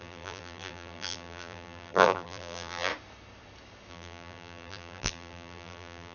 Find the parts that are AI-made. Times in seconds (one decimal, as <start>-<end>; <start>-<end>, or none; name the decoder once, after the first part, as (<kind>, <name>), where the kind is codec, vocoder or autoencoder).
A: 0.0-2.9 (vocoder, BigVGAN v2); 3.9-6.1